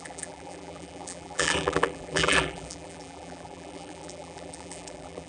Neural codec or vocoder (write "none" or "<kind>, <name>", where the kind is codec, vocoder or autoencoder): vocoder, BigVGAN v2